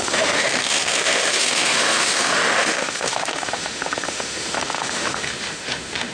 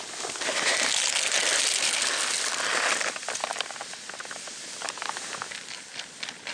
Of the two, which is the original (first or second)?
second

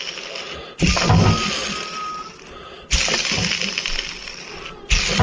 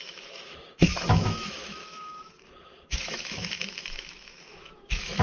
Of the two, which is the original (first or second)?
first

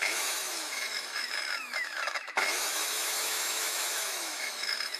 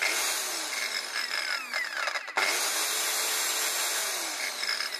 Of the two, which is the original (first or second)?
second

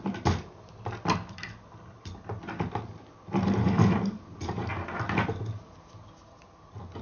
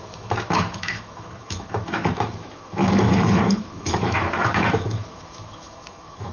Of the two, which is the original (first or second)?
first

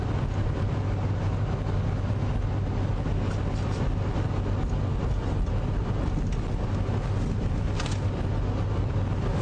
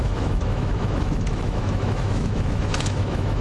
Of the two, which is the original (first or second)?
first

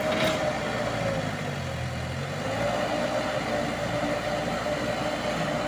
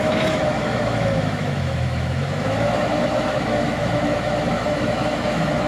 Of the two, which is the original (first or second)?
first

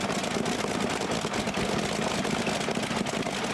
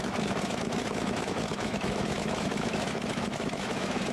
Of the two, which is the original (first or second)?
first